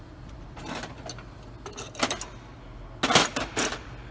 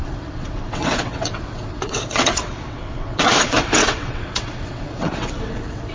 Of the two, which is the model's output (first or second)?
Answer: second